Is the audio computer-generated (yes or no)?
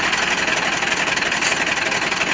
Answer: no